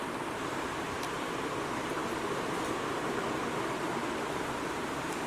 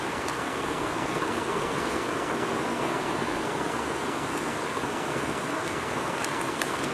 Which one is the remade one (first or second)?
second